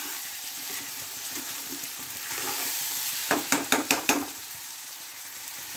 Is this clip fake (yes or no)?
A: yes